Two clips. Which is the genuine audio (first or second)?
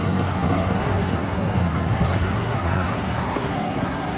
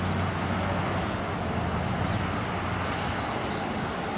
second